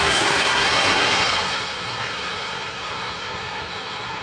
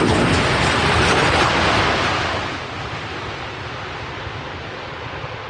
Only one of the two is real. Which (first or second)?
second